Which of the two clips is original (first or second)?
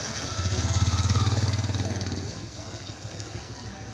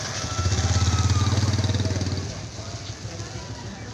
second